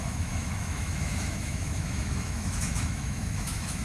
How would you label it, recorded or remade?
remade